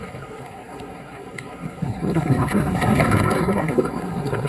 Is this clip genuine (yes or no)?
no